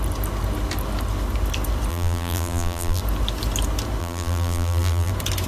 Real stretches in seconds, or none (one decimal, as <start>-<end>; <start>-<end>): 0.0-1.9; 3.0-4.0; 5.1-5.5